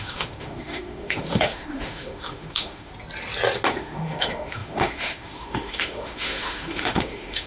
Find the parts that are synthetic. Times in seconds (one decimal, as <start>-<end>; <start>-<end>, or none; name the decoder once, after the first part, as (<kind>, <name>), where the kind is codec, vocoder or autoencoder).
0.0-2.9 (autoencoder, DAC-VAE); 3.7-7.5